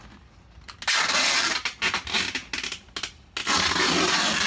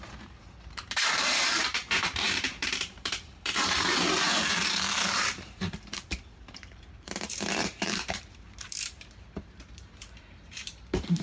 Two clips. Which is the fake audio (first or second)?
second